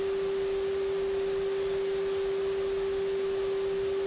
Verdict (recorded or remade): recorded